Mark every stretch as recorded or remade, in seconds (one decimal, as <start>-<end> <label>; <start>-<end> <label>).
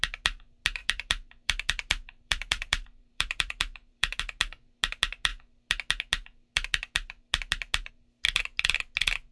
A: 0.0-0.8 recorded; 0.8-4.2 remade; 4.2-9.3 recorded